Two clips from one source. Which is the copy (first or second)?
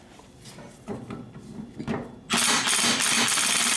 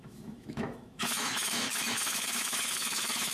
second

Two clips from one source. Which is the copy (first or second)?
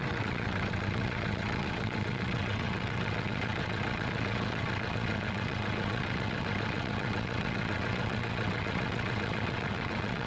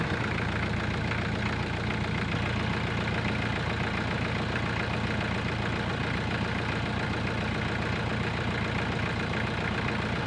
first